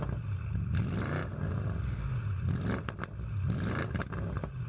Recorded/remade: recorded